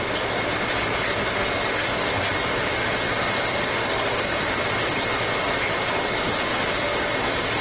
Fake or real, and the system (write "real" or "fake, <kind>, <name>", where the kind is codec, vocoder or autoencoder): real